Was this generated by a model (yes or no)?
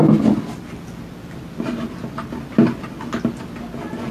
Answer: no